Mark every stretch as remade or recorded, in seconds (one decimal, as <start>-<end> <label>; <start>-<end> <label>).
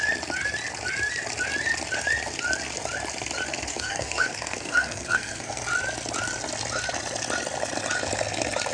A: 0.0-3.7 recorded; 3.7-5.6 remade; 5.6-8.7 recorded